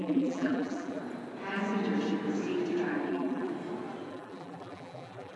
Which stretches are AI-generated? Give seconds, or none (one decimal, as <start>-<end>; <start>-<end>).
0.0-1.0; 3.1-3.5; 4.1-5.4